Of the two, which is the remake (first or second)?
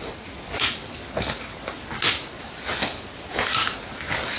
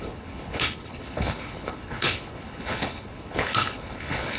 second